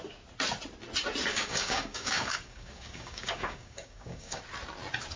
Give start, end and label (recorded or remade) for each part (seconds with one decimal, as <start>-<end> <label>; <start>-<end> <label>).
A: 0.0-1.3 recorded; 1.3-4.4 remade; 4.4-5.2 recorded